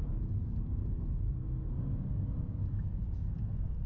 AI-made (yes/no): no